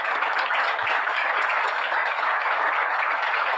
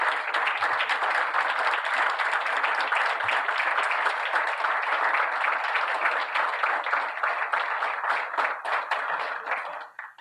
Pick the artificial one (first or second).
first